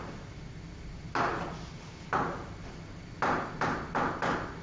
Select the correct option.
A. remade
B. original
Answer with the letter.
B